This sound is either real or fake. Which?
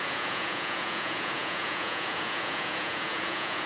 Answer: fake